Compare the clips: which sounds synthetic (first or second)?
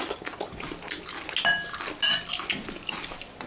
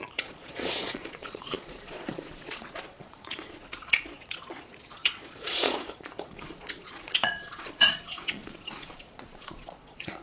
second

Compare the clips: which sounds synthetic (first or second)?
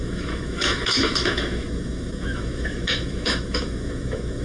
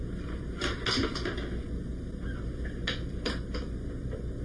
first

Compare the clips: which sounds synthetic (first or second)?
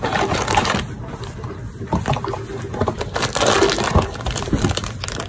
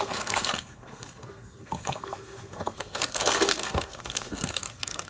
second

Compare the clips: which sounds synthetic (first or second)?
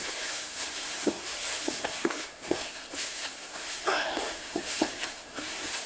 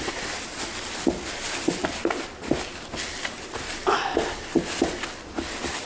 first